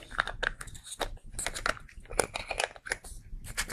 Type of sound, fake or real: real